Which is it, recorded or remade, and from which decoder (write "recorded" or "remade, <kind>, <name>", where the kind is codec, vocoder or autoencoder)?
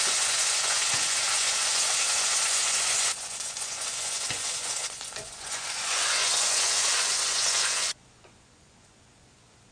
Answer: remade, vocoder, Vocos